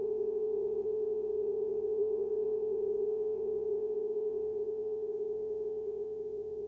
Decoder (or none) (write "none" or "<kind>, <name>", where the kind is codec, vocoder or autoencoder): vocoder, WaveNeXt